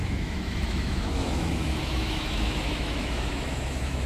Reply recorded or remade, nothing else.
remade